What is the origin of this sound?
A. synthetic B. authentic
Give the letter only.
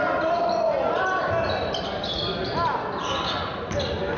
B